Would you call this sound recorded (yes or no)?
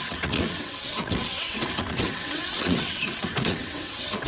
no